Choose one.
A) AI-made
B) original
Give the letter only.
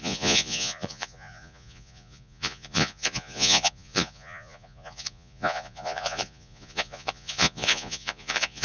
A